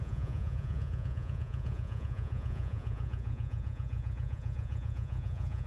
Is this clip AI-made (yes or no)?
yes